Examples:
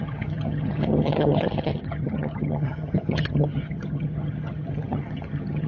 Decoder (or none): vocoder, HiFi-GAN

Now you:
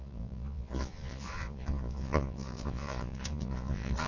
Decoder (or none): vocoder, Vocos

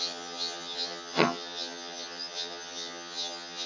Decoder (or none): vocoder, HiFi-GAN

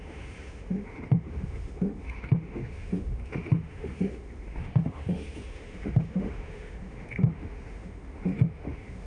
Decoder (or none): autoencoder, DAC-VAE